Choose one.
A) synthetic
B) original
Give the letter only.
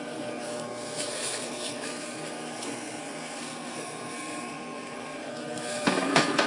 A